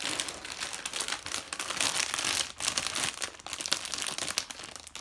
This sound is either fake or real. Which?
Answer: real